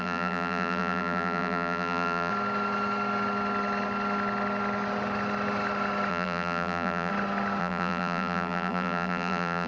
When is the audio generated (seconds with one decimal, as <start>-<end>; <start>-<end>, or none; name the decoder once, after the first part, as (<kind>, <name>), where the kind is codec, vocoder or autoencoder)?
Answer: 0.0-2.3 (vocoder, BigVGAN v2); 6.1-7.1; 7.6-9.7